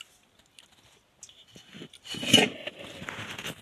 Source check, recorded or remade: recorded